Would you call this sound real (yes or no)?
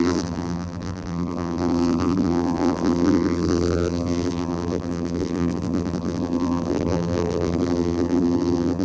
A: no